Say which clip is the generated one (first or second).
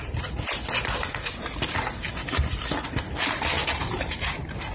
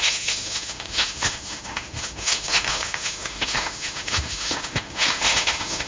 second